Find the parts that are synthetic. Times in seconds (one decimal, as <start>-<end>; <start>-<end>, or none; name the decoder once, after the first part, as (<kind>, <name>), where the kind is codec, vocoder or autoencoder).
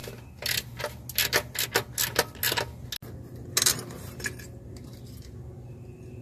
none